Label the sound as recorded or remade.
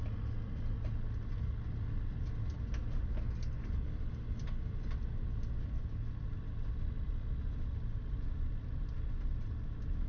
recorded